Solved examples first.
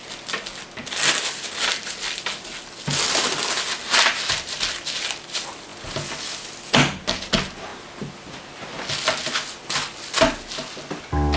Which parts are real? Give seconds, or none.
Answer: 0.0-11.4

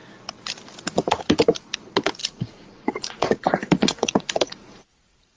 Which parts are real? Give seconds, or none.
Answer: 0.0-2.2

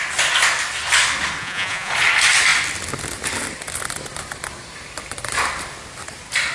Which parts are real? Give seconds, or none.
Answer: 0.0-1.4; 1.9-6.5

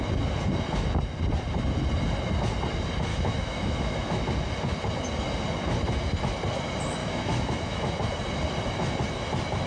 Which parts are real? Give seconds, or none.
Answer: 0.0-3.1; 4.2-7.0; 7.9-9.7

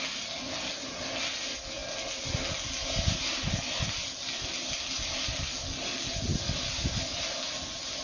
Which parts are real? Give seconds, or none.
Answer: 0.0-8.0

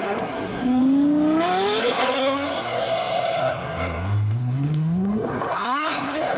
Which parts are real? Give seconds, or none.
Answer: 0.8-1.8

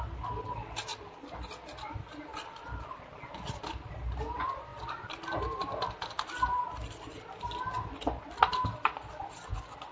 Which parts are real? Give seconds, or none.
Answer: 0.0-9.9

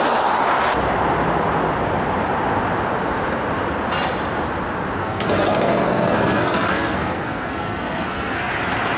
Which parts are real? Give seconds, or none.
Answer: 0.0-5.0; 8.5-9.0